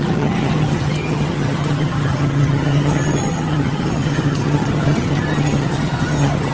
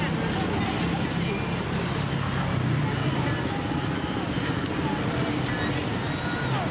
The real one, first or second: second